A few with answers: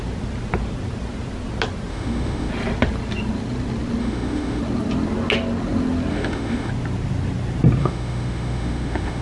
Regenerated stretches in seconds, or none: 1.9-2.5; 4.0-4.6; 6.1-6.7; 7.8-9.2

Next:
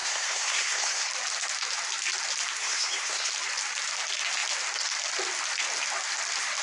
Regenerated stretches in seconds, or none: 0.0-1.1; 2.6-3.3